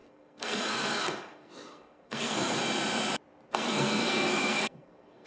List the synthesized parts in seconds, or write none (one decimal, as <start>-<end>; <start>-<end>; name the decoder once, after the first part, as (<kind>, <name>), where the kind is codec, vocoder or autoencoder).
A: 0.0-2.6 (codec, SNAC); 3.5-5.3